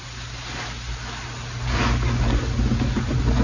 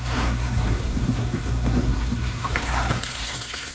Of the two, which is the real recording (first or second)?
first